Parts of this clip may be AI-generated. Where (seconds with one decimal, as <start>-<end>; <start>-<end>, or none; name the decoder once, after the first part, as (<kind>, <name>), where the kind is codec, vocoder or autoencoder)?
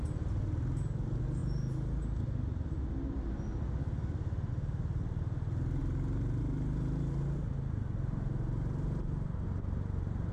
none